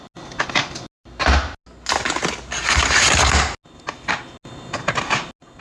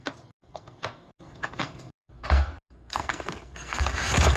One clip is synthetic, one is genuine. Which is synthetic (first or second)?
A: second